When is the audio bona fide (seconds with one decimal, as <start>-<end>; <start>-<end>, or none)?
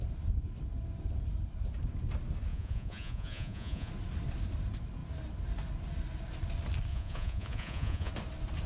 0.0-2.5; 3.9-6.9; 8.1-8.7